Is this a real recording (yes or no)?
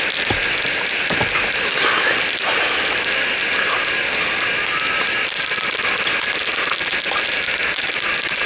yes